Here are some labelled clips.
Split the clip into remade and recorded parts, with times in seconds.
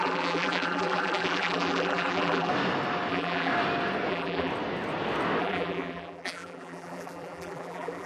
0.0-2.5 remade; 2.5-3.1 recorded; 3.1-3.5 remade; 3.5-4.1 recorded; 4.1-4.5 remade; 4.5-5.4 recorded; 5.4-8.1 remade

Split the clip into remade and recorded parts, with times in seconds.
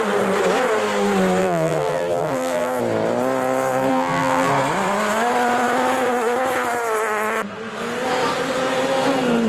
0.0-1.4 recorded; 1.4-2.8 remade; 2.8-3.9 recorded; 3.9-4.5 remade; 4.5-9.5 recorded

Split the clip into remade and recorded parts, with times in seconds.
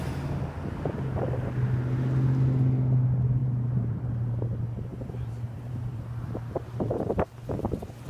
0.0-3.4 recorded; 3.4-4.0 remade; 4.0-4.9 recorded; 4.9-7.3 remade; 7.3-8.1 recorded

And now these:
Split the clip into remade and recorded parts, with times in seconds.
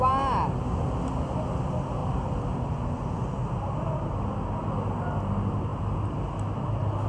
0.0-2.0 recorded; 2.0-2.7 remade; 2.7-7.1 recorded